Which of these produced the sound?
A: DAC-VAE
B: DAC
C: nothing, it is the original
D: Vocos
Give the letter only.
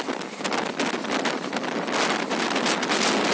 C